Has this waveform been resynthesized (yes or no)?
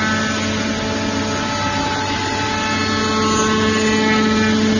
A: no